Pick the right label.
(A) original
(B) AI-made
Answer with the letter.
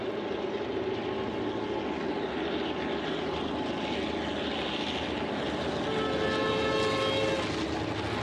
A